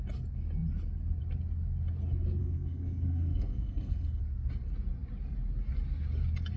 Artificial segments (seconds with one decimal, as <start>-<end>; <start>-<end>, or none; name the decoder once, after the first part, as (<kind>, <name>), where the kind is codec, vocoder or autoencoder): 2.4-4.2 (codec, SNAC)